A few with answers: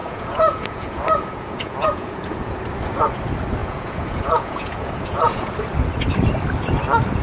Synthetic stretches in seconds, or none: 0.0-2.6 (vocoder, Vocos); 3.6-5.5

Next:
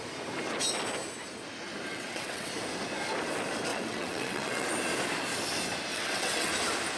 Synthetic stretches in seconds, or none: 1.9-2.5 (vocoder, WaveNeXt); 3.7-4.7; 5.9-6.5

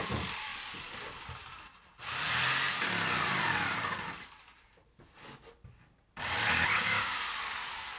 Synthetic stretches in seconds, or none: 6.7-7.2 (codec, DAC)

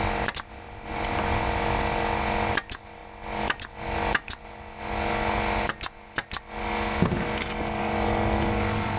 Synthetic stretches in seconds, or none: none

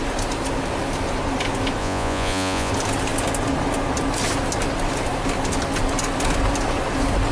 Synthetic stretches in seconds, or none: 1.8-2.7 (vocoder, Vocos)

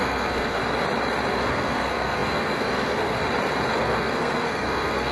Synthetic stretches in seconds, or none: 0.0-0.6 (codec, SNAC); 1.3-3.2; 3.8-5.1